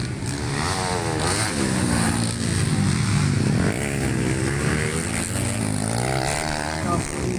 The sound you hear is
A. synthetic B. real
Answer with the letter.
B